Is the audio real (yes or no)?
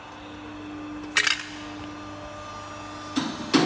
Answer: yes